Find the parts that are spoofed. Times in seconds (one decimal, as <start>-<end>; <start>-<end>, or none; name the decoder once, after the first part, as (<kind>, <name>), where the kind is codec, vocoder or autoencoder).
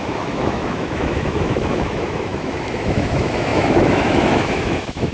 0.0-5.1 (autoencoder, DAC-VAE)